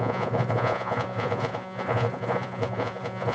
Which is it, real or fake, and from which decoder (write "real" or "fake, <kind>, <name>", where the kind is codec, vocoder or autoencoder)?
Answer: fake, vocoder, Vocos